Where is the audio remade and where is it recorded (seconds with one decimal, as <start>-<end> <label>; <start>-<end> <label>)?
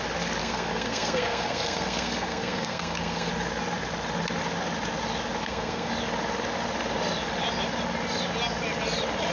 0.0-0.4 recorded; 0.4-3.3 remade; 3.3-5.4 recorded; 5.4-5.9 remade; 5.9-9.3 recorded